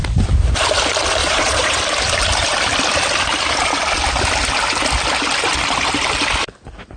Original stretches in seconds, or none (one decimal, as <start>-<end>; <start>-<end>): 0.0-1.2; 1.8-7.0